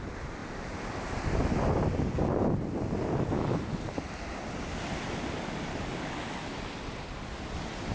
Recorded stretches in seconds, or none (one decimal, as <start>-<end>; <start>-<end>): 0.0-5.7; 6.6-7.9